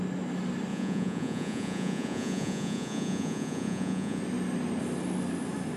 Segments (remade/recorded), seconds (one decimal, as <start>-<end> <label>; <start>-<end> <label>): 0.0-0.7 recorded; 0.7-4.2 remade; 4.2-5.8 recorded